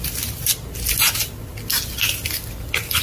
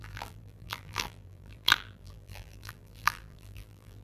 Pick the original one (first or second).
first